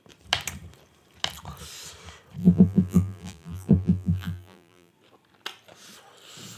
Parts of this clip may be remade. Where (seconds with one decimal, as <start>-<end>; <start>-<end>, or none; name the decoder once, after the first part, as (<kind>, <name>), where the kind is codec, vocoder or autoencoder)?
2.4-4.9 (vocoder, BigVGAN v2)